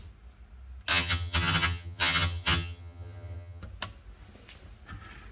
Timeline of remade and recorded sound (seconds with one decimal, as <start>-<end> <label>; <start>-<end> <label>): 0.0-0.9 recorded; 0.9-3.6 remade; 3.6-5.3 recorded